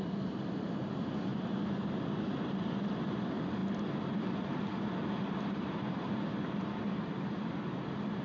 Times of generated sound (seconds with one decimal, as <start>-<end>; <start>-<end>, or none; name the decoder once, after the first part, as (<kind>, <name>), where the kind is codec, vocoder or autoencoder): none